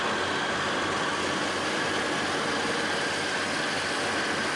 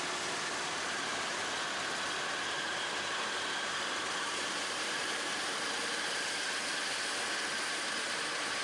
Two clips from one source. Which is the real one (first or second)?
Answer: first